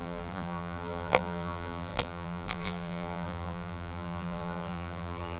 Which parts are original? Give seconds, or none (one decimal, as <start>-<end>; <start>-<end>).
none